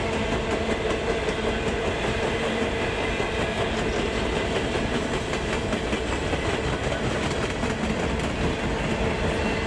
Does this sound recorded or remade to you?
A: recorded